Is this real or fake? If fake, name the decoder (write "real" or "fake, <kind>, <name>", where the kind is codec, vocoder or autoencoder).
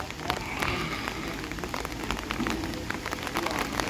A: real